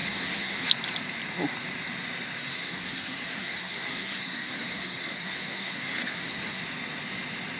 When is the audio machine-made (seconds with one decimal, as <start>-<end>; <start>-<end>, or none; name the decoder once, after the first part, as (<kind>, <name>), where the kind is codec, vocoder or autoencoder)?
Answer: 0.0-0.7 (codec, SNAC); 2.4-6.6